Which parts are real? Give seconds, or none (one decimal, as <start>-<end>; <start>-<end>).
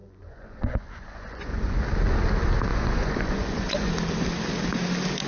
1.8-2.7; 3.9-5.3